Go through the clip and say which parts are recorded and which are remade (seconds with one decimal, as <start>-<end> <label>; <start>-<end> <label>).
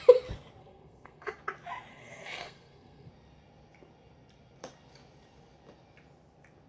0.0-0.6 recorded; 0.6-1.3 remade; 1.3-1.9 recorded; 1.9-3.1 remade; 3.1-6.7 recorded